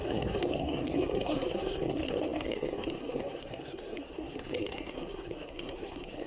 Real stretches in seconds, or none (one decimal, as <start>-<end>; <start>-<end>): none